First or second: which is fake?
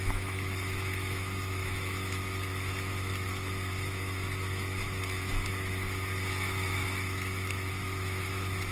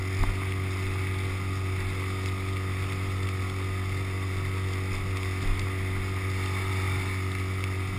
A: first